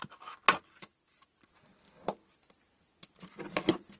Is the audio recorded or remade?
recorded